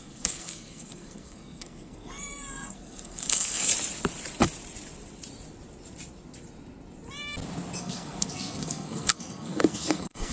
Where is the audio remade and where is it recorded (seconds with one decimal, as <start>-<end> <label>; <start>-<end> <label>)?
0.0-3.7 remade; 3.7-7.8 recorded; 7.8-10.3 remade